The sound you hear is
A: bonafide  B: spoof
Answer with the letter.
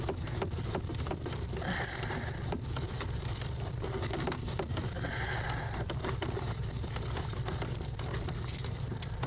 B